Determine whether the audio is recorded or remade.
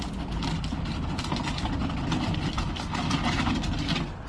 recorded